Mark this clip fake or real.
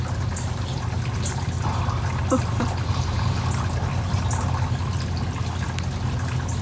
real